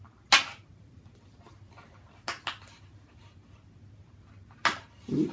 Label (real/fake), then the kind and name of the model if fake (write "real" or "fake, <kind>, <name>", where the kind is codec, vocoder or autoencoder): real